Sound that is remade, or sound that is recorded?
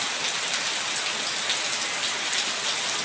recorded